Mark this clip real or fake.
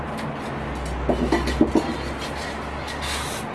real